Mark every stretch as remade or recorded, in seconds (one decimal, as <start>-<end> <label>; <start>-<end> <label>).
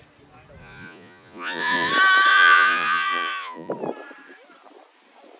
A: 0.0-0.6 recorded; 0.6-1.9 remade; 1.9-2.3 recorded; 2.3-3.7 remade; 3.7-5.4 recorded